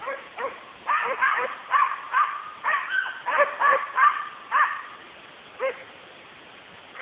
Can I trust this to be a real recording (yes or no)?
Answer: yes